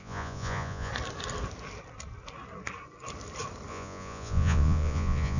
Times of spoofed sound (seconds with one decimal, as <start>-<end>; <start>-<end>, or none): 0.0-0.9; 3.7-5.4